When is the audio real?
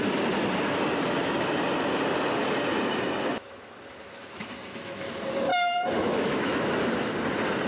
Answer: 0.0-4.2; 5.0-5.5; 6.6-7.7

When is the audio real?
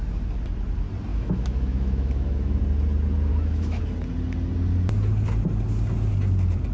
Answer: 0.0-1.1; 2.6-3.3; 3.8-6.7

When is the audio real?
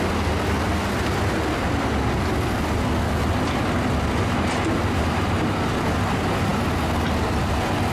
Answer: 0.0-7.9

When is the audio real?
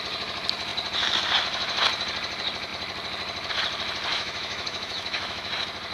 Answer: 0.0-4.1; 5.5-5.9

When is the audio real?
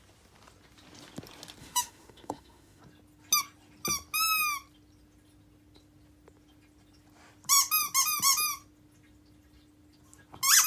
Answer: 0.0-1.6; 2.8-10.7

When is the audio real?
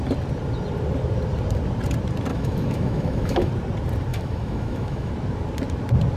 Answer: 0.0-2.3; 3.5-4.1; 5.1-6.2